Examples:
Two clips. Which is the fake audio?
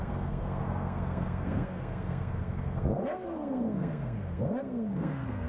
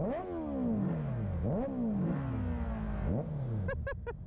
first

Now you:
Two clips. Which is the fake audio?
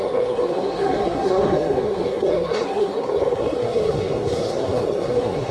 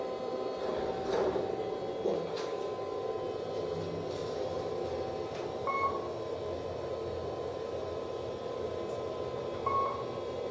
first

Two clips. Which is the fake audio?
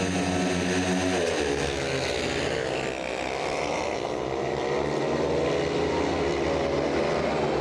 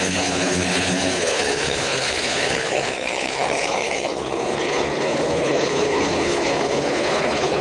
second